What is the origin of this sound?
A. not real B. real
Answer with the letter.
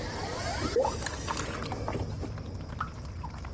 B